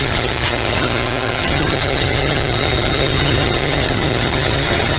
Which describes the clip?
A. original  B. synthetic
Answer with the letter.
B